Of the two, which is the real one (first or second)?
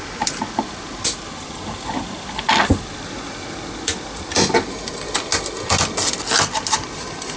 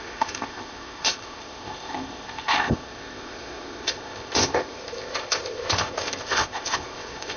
first